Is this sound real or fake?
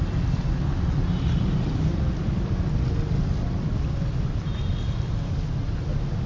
real